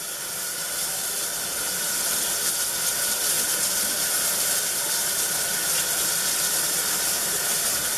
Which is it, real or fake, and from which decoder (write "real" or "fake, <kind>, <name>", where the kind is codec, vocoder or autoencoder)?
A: real